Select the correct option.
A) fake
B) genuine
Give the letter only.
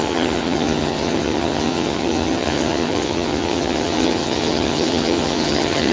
A